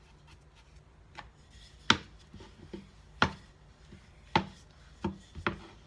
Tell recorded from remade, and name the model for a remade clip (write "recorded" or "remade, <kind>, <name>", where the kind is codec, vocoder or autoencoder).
recorded